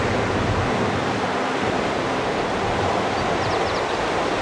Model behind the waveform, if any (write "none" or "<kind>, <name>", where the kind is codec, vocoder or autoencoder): none